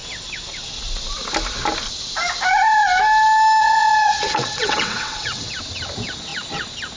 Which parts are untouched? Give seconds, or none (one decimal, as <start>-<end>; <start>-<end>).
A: 0.0-3.6; 5.5-7.0